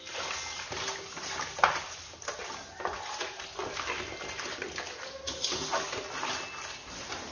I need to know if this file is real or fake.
real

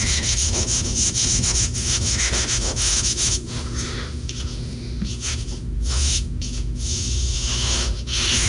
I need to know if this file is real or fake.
fake